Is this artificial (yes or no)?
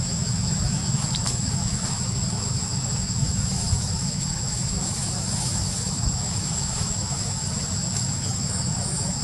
yes